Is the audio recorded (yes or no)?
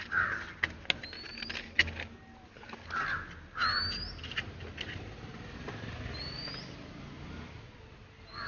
yes